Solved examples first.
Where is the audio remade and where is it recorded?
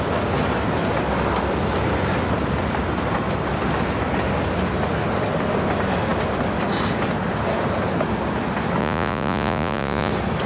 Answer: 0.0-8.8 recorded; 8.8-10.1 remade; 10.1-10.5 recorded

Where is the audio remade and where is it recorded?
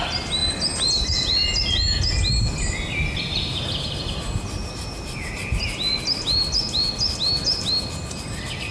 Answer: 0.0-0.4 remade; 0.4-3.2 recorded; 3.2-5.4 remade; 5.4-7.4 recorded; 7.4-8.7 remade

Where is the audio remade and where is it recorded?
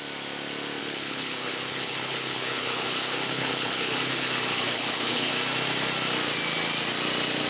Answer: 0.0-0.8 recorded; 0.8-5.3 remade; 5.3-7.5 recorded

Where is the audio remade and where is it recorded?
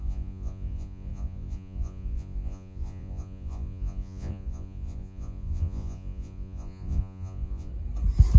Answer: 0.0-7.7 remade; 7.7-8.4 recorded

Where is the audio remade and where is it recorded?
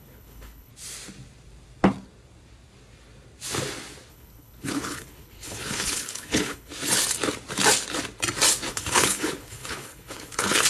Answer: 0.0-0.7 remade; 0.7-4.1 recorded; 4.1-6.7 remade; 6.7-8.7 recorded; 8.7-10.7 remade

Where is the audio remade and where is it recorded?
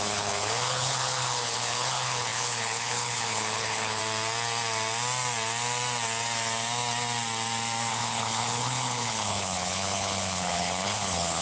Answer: 0.0-4.0 remade; 4.0-7.9 recorded; 7.9-11.4 remade